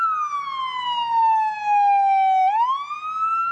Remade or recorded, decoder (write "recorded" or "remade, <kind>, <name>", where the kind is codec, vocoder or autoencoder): recorded